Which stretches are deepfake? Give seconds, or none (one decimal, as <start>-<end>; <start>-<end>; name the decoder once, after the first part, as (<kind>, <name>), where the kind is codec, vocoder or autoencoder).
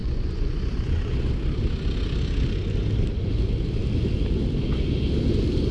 0.0-1.3 (vocoder, Vocos)